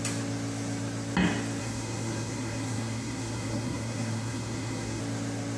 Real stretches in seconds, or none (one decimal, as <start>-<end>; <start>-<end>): 0.0-1.6; 5.0-5.6